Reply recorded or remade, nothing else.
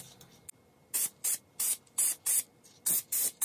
recorded